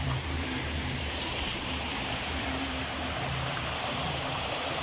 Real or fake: fake